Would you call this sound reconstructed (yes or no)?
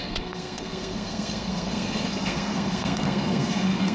yes